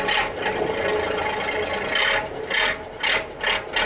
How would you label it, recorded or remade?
recorded